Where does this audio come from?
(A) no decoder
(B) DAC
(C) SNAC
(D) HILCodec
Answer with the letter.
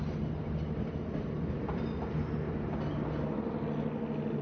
A